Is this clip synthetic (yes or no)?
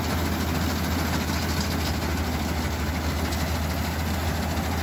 no